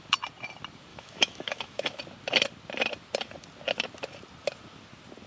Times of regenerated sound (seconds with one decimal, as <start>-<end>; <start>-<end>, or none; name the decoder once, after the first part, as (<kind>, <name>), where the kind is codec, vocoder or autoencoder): 0.9-2.0 (autoencoder, DAC-VAE)